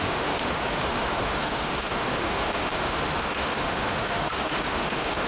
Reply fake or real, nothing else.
fake